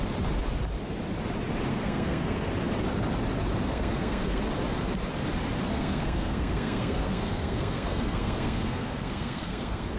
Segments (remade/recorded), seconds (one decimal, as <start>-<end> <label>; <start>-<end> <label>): 0.0-1.7 recorded; 1.7-2.5 remade; 2.5-3.7 recorded; 3.7-4.4 remade; 4.4-5.7 recorded; 5.7-10.0 remade